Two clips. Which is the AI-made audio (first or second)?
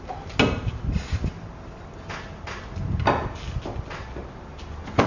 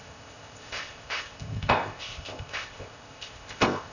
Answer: second